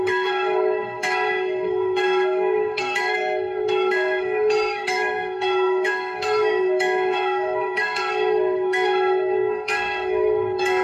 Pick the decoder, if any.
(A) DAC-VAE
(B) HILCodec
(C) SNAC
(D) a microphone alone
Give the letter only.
C